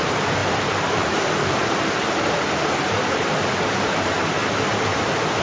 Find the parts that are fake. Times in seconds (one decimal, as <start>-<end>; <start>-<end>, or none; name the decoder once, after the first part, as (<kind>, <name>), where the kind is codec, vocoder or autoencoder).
0.0-4.4 (vocoder, BigVGAN v2)